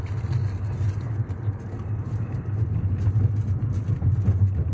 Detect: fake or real real